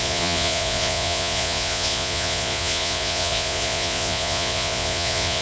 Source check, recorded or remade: remade